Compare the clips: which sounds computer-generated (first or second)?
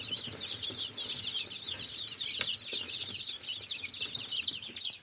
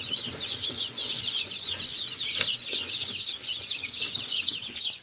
second